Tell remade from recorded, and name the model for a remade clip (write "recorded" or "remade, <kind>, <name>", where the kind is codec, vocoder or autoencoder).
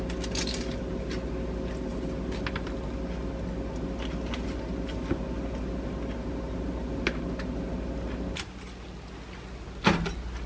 recorded